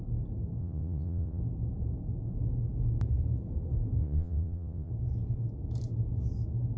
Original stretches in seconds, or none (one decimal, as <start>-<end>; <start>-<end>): 0.0-0.6; 1.4-4.0; 4.9-6.8